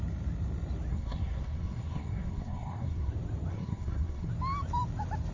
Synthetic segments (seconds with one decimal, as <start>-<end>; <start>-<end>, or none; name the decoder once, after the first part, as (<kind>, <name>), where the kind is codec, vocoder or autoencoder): 0.9-3.1 (codec, SNAC); 3.5-4.3